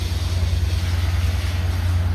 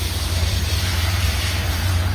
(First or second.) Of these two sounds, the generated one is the second